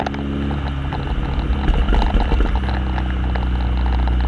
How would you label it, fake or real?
real